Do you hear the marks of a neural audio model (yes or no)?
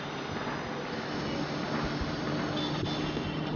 no